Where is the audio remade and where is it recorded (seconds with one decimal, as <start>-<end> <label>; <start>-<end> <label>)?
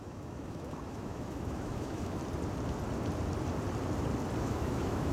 0.0-2.2 remade; 2.2-4.4 recorded; 4.4-5.1 remade